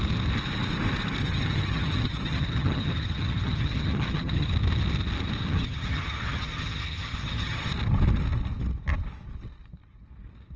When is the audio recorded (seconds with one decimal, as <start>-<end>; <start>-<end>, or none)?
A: 0.0-1.2; 4.5-5.4; 7.7-10.6